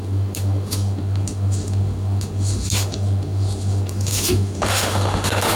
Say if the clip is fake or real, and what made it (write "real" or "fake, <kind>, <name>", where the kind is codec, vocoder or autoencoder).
fake, autoencoder, DAC-VAE